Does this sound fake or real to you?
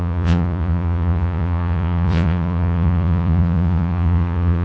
fake